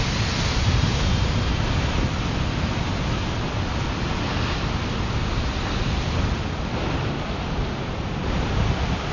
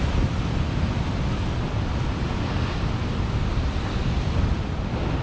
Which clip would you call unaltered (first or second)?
first